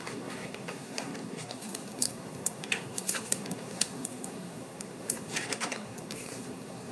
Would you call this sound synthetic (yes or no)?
yes